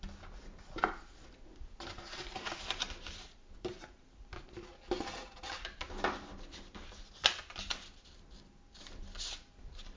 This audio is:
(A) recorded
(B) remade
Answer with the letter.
A